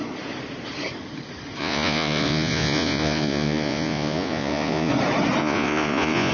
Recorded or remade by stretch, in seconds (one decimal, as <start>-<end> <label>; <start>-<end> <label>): 0.0-1.6 recorded; 1.6-4.9 remade; 4.9-5.4 recorded; 5.4-6.3 remade

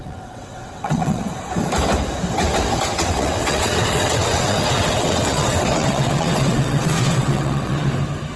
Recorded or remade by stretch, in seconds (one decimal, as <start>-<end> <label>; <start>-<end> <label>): 0.0-1.3 remade; 1.3-2.9 recorded; 2.9-7.9 remade; 7.9-8.4 recorded

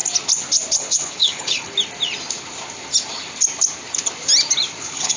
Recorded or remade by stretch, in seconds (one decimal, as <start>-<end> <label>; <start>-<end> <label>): 0.0-0.8 recorded; 0.8-1.7 remade; 1.7-4.8 recorded; 4.8-5.2 remade

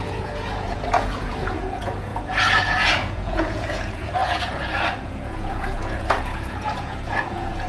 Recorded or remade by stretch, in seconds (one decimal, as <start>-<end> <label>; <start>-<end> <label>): 0.0-7.7 remade

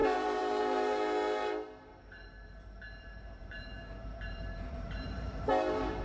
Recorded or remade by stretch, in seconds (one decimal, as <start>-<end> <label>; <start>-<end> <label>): 0.0-0.6 remade; 0.6-1.9 recorded; 1.9-5.5 remade; 5.5-6.0 recorded

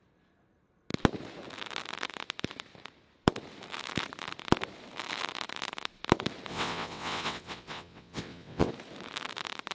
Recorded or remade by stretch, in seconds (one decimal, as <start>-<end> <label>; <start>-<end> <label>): 0.0-6.5 recorded; 6.5-8.7 remade; 8.7-9.7 recorded

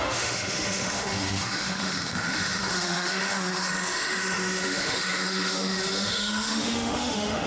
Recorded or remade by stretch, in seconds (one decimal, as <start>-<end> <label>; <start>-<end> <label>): 0.0-7.5 remade